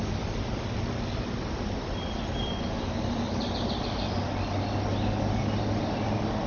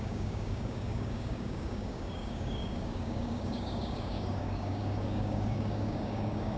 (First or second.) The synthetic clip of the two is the second